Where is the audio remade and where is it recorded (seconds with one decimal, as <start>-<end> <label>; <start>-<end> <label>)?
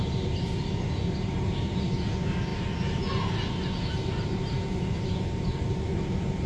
0.0-6.5 recorded